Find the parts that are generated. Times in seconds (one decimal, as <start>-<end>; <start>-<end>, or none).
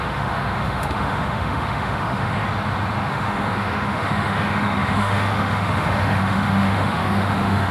0.0-2.4; 3.0-7.7